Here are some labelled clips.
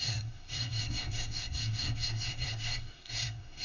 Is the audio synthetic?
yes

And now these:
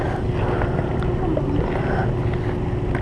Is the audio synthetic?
no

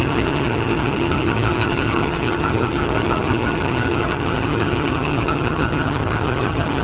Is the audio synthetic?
yes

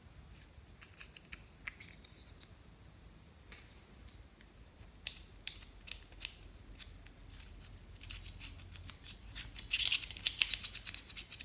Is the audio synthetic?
no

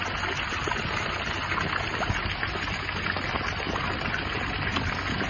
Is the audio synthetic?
no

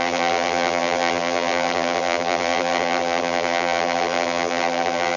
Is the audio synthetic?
yes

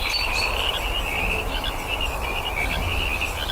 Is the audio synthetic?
no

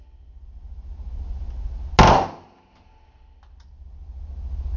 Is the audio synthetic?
no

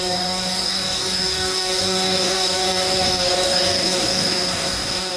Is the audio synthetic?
yes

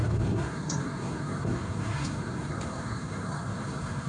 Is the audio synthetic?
yes